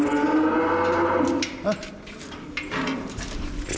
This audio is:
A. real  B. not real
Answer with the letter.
A